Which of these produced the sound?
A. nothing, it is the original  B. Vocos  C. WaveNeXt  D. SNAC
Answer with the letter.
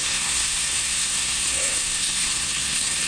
D